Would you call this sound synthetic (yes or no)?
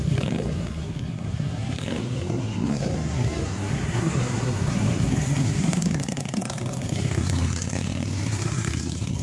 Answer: yes